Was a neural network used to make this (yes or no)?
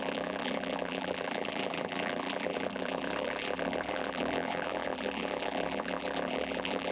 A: yes